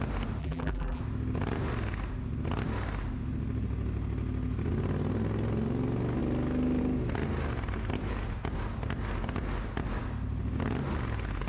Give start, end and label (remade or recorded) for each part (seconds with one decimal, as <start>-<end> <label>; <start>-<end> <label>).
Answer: 0.0-0.4 recorded; 0.4-1.0 remade; 1.0-11.5 recorded